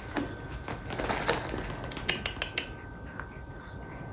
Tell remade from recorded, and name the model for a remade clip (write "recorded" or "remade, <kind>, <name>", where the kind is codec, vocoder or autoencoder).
recorded